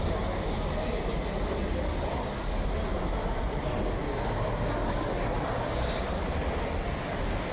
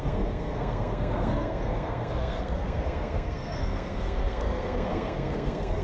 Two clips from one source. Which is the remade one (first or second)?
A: second